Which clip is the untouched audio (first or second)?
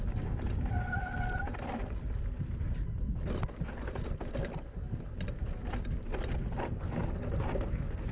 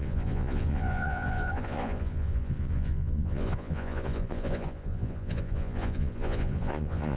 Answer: first